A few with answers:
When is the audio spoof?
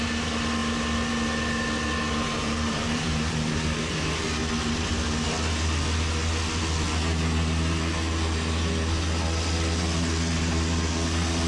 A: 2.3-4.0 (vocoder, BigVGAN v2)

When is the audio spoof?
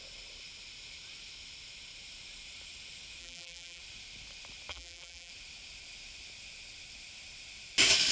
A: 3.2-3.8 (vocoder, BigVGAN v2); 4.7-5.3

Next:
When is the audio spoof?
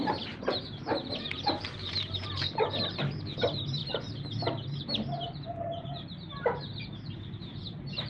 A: 0.0-8.1 (vocoder, BigVGAN v2)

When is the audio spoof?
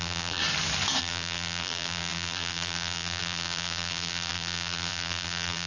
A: 0.0-0.4 (vocoder, BigVGAN v2); 1.0-5.7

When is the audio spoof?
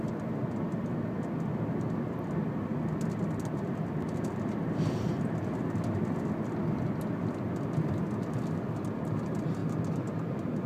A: none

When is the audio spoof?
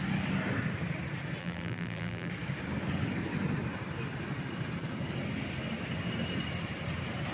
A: 1.4-2.3 (vocoder, BigVGAN v2)